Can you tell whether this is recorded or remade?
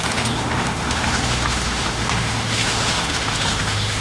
remade